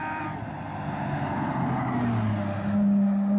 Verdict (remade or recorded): recorded